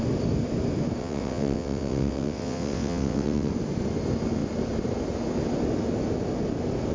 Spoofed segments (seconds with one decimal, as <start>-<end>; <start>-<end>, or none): 1.0-3.5